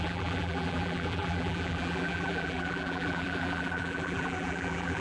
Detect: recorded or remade remade